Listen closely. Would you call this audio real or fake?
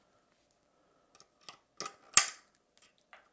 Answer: real